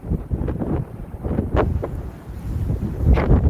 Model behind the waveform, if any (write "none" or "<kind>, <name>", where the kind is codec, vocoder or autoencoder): vocoder, BigVGAN v2